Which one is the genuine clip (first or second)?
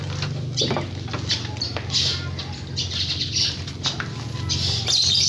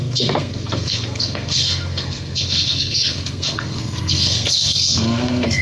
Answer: first